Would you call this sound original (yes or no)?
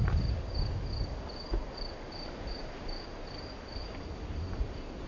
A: yes